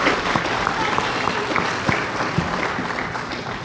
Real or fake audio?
real